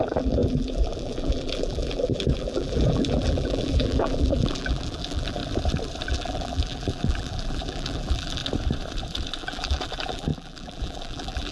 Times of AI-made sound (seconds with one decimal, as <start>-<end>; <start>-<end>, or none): 0.0-5.4; 6.1-8.4; 9.4-11.5